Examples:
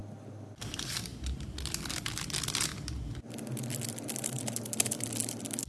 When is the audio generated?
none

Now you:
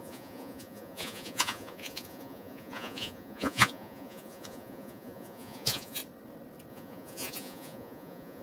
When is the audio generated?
0.0-6.0 (vocoder, Vocos); 6.7-8.4

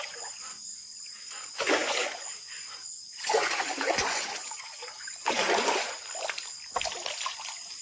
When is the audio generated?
0.0-6.0 (vocoder, Vocos)